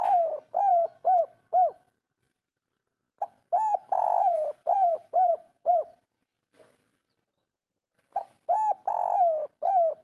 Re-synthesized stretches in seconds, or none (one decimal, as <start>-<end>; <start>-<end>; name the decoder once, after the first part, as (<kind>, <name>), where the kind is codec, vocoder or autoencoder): 0.7-1.2 (vocoder, Vocos); 3.7-6.4